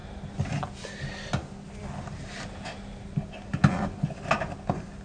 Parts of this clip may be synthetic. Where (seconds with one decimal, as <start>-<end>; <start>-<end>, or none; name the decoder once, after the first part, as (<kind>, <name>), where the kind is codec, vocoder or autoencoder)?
none